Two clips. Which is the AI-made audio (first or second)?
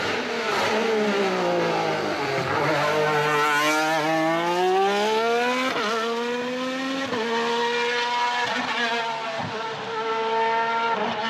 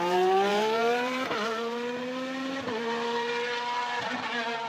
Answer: second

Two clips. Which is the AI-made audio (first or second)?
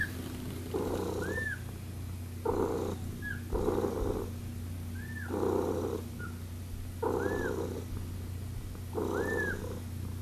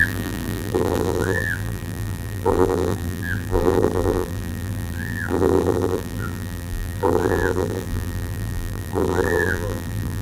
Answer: second